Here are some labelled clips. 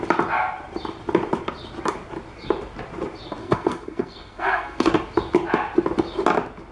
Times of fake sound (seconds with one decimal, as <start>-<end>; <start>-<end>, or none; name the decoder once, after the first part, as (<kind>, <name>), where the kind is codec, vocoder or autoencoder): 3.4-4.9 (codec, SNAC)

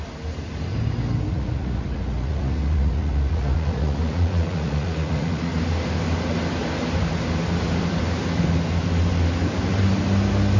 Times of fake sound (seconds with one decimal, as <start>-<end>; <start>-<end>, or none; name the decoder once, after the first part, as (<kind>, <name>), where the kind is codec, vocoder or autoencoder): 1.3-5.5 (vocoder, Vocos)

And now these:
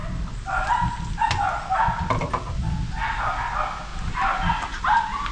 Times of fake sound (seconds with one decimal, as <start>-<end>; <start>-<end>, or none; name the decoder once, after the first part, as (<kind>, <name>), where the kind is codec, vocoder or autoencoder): none